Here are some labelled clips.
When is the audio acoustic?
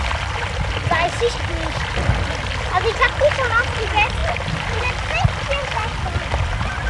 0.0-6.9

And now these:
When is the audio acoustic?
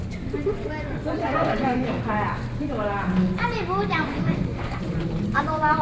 0.0-1.2; 2.0-4.1; 4.8-5.8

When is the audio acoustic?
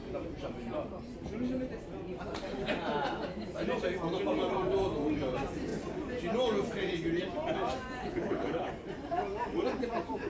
0.0-8.0; 8.7-10.3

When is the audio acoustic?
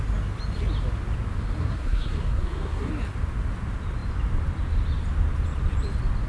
0.0-1.6; 2.9-6.3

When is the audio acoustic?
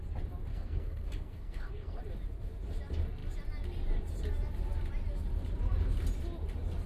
0.0-0.5; 2.0-6.9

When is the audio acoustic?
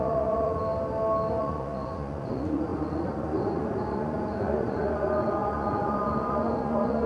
0.6-1.4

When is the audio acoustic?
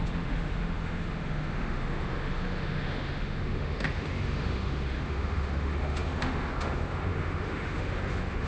none